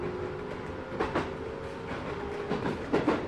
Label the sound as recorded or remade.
recorded